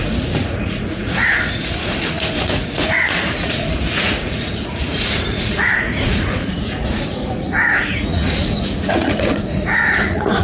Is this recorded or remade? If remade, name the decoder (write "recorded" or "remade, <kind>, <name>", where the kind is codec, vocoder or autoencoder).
remade, vocoder, Vocos